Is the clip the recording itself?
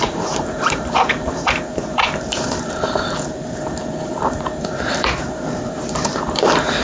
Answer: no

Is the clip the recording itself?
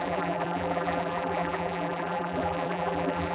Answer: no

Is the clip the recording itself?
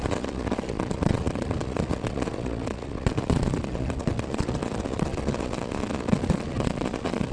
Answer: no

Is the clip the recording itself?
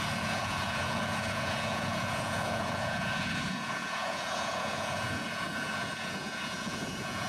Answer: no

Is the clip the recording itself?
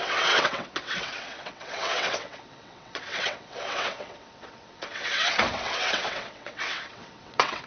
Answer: no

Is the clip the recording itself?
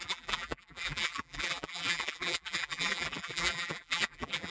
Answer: no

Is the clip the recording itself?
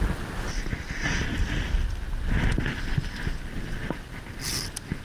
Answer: yes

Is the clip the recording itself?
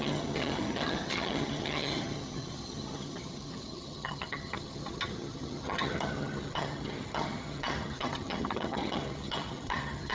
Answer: no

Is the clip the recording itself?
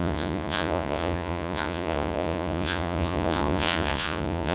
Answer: no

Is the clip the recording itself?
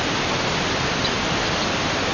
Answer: yes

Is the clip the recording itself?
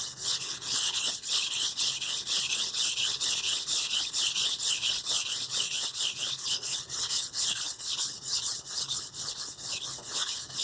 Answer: no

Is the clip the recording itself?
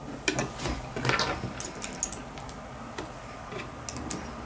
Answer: yes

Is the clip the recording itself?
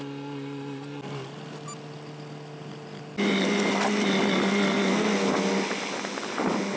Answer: yes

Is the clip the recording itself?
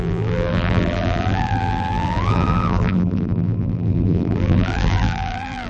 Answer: no